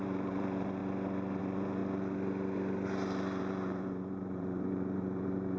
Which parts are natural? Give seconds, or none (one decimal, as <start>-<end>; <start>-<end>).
0.8-1.4; 1.8-3.4